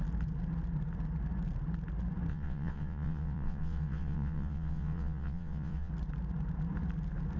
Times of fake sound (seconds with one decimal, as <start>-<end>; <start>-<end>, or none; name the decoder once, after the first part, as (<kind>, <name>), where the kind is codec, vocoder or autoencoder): 2.3-5.9 (vocoder, WaveNeXt)

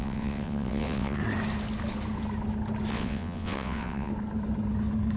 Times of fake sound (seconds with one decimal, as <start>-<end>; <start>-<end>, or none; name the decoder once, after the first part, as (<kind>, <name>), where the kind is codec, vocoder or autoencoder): 0.0-1.2 (vocoder, WaveNeXt); 2.9-4.1